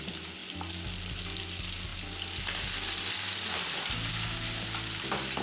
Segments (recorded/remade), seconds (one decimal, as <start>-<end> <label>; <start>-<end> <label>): 0.0-5.4 recorded